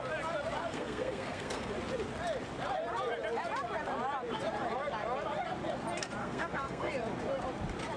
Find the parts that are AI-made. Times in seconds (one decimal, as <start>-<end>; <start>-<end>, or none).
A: 0.7-1.7; 6.2-6.9